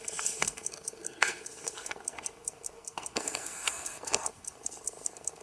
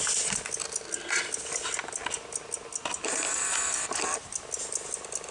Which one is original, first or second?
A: second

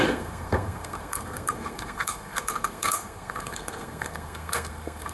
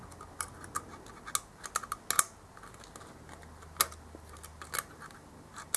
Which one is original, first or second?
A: second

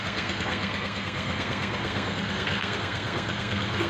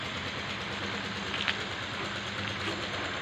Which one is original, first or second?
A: second